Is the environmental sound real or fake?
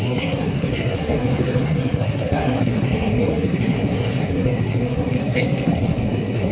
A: fake